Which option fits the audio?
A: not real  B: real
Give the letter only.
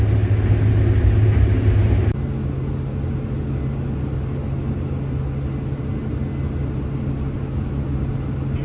B